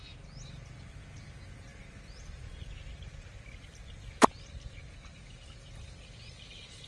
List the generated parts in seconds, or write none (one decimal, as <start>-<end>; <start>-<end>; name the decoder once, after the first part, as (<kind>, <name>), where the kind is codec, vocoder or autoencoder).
1.7-4.8 (vocoder, BigVGAN v2)